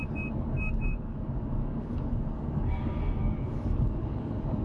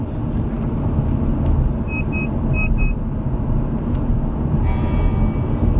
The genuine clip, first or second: second